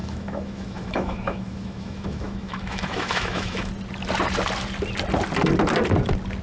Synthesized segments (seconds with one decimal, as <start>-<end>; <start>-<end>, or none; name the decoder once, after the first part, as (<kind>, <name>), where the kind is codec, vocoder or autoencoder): 0.0-3.7 (autoencoder, DAC-VAE)